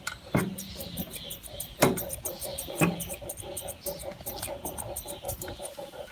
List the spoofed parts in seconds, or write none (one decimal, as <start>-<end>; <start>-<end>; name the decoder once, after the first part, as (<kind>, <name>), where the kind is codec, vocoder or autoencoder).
none